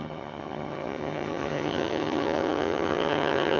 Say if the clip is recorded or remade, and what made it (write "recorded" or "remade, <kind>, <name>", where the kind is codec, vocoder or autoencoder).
remade, vocoder, HiFi-GAN